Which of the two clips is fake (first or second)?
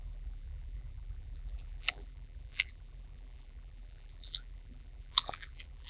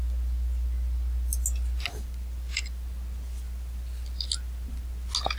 first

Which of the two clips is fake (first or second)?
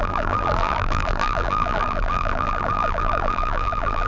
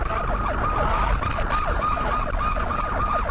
first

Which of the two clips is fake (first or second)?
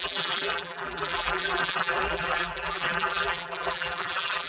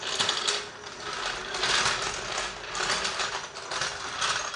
first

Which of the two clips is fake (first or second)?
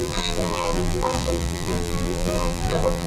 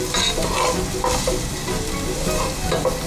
first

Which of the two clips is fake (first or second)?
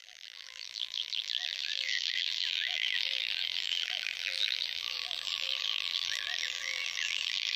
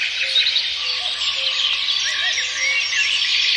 first